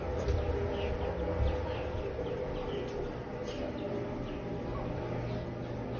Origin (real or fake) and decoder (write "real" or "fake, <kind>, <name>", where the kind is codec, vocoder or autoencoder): real